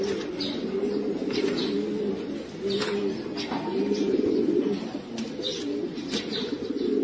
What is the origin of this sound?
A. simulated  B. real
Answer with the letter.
B